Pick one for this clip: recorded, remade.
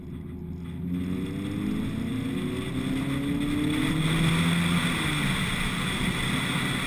recorded